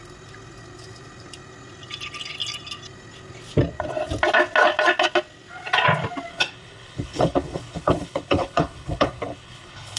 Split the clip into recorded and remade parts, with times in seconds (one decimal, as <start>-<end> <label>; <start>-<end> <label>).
0.0-6.3 recorded; 6.3-10.0 remade